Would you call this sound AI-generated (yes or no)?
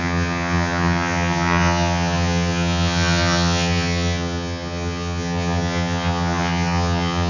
yes